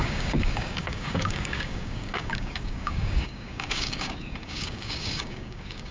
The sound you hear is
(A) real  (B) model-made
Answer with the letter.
B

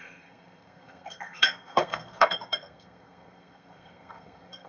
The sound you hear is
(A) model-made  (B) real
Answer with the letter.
A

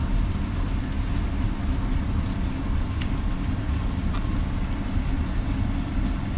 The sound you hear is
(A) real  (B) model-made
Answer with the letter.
A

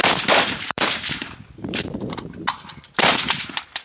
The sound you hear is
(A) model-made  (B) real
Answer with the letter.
A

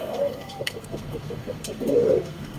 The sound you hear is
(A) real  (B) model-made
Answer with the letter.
B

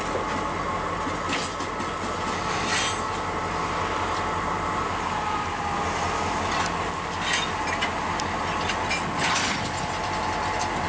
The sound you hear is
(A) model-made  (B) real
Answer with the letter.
B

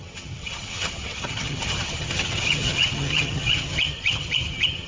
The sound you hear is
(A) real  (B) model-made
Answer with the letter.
B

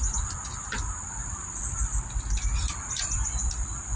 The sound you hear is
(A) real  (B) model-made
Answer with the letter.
A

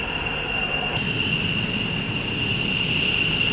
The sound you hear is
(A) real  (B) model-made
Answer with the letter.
A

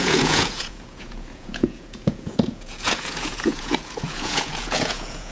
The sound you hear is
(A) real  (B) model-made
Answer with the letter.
B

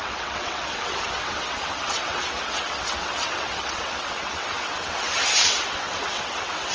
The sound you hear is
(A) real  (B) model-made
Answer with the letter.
B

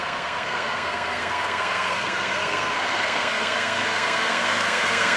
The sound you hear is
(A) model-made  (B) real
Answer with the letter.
A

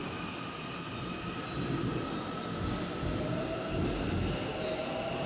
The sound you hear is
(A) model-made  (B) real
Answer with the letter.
B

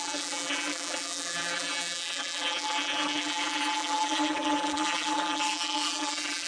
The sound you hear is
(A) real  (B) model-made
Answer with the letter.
B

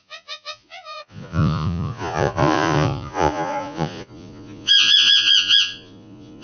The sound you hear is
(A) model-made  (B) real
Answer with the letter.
A